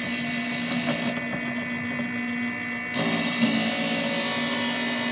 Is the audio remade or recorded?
recorded